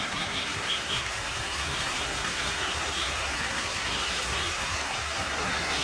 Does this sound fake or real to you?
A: fake